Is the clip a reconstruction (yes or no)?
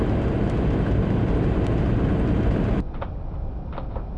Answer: no